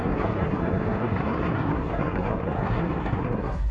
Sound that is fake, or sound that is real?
fake